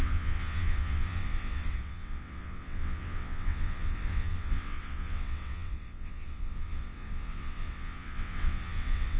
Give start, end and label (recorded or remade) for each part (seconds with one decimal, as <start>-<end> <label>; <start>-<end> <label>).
0.0-9.2 remade